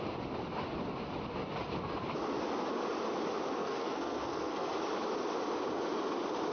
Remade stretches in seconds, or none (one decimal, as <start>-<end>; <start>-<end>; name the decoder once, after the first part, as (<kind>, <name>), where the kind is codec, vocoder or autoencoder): 3.6-4.7 (codec, SNAC)